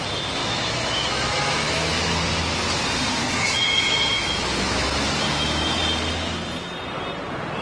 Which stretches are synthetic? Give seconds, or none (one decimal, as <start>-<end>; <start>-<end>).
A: 0.4-2.2; 3.2-5.8